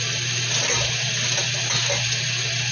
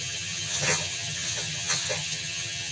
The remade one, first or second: second